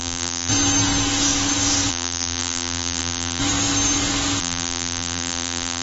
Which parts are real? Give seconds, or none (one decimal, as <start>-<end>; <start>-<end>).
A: 0.5-1.9; 3.4-4.4